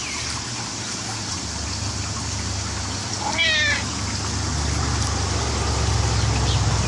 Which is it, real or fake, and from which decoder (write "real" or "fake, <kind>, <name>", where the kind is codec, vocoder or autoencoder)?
real